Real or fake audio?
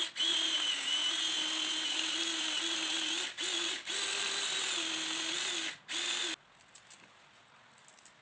real